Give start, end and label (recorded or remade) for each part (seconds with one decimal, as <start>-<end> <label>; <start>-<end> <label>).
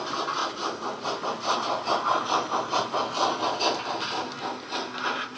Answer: 0.0-5.4 recorded